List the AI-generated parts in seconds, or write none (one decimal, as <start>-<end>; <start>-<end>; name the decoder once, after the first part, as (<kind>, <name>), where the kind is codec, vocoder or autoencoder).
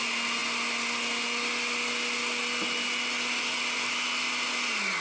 none